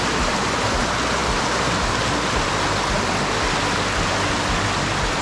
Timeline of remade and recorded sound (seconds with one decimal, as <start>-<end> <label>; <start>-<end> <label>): 0.0-5.2 recorded